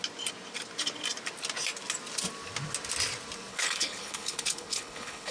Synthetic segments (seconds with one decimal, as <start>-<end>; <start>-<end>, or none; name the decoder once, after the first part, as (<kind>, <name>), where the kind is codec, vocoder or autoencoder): 3.5-5.3 (codec, HILCodec)